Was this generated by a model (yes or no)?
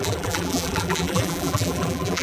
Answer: yes